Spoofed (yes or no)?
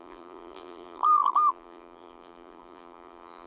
yes